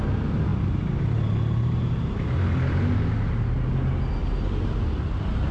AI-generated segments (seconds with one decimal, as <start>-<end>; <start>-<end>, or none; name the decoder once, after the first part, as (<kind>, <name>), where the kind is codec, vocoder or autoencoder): none